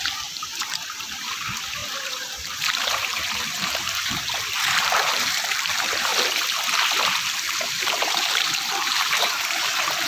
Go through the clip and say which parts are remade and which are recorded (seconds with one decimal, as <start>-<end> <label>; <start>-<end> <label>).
0.0-6.1 remade; 6.1-7.0 recorded; 7.0-10.1 remade